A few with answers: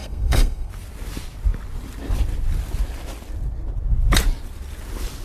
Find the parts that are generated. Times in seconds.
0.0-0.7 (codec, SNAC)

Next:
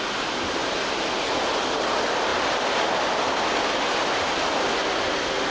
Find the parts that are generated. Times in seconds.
none